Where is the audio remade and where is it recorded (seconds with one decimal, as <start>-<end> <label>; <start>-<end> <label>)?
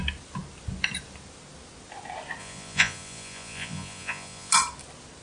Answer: 0.0-2.4 recorded; 2.4-4.5 remade; 4.5-5.2 recorded